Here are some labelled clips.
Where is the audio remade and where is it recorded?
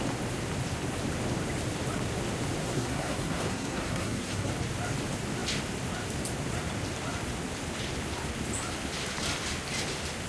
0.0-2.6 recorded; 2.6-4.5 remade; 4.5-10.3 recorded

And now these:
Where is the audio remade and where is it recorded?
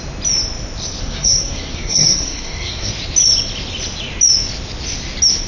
0.0-1.0 recorded; 1.0-2.9 remade; 2.9-5.5 recorded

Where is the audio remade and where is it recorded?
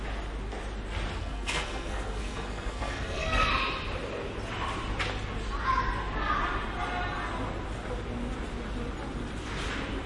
0.0-1.2 recorded; 1.2-3.5 remade; 3.5-10.1 recorded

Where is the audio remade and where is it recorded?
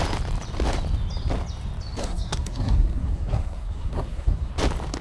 0.0-2.0 recorded; 2.0-4.5 remade; 4.5-5.0 recorded